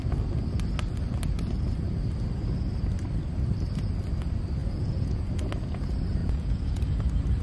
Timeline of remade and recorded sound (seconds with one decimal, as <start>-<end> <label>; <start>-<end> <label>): 0.0-4.6 recorded; 4.6-5.3 remade; 5.3-6.2 recorded; 6.2-6.8 remade; 6.8-7.4 recorded

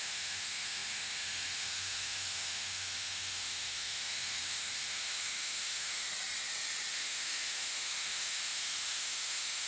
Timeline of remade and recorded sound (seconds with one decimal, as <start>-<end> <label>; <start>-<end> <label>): 0.0-6.1 remade; 6.1-6.9 recorded; 6.9-9.7 remade

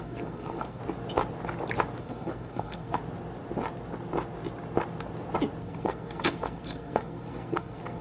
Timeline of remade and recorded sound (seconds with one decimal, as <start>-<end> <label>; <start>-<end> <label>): 0.0-0.8 remade; 0.8-2.0 recorded; 2.0-3.0 remade; 3.0-5.6 recorded; 5.6-8.0 remade